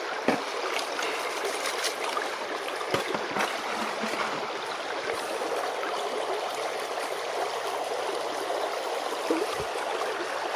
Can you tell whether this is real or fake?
real